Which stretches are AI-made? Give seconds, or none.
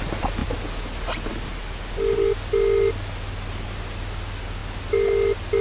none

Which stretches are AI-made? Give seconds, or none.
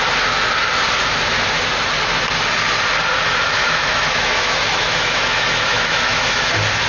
3.6-6.5 (autoencoder, DAC-VAE)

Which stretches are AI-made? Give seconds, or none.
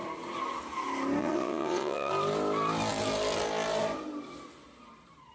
1.2-2.1 (vocoder, WaveNeXt)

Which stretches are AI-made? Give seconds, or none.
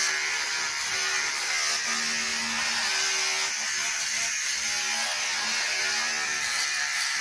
none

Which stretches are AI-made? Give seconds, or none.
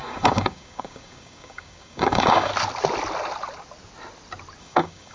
0.0-2.5 (codec, DAC); 4.6-5.1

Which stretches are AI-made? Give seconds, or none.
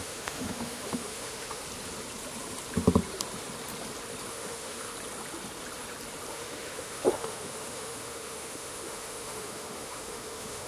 0.0-1.6 (autoencoder, DAC-VAE); 4.3-4.9; 6.3-10.7